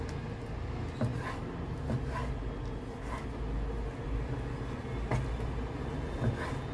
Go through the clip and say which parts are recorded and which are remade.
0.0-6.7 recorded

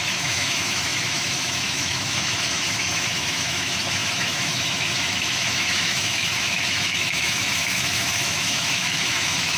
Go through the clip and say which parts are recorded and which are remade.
0.0-9.6 remade

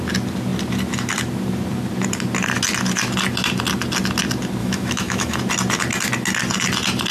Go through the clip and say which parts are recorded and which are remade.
0.0-4.6 recorded; 4.6-5.4 remade; 5.4-7.1 recorded

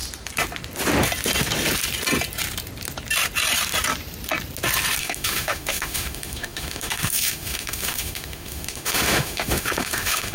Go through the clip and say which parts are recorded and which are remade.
0.0-5.0 recorded; 5.0-10.3 remade